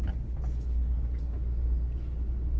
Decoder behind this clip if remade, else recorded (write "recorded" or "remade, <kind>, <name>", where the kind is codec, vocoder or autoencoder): recorded